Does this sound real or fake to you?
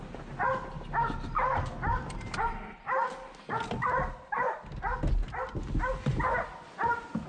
real